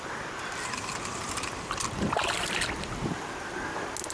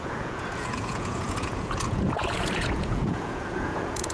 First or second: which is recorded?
first